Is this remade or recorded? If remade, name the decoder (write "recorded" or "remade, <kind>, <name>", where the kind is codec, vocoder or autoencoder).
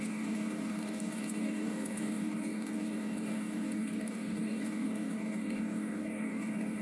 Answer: remade, codec, DAC